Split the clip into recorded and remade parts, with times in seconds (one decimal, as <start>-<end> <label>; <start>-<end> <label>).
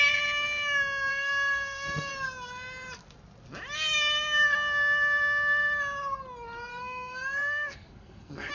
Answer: 0.0-1.1 recorded; 1.1-2.1 remade; 2.1-6.7 recorded; 6.7-8.5 remade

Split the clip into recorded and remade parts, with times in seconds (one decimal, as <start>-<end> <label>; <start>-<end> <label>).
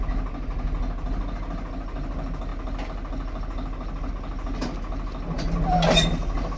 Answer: 0.0-6.6 recorded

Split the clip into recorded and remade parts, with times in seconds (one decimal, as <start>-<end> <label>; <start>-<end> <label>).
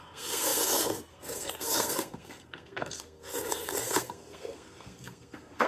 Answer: 0.0-5.7 remade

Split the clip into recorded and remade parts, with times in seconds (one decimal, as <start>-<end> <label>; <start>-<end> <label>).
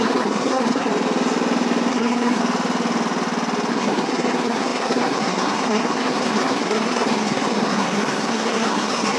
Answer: 0.0-0.9 remade; 0.9-1.9 recorded; 1.9-2.4 remade; 2.4-3.7 recorded; 3.7-9.2 remade